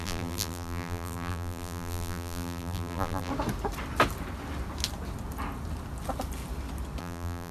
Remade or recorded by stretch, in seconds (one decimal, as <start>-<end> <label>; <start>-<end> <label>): 0.0-3.3 remade; 3.3-7.0 recorded; 7.0-7.5 remade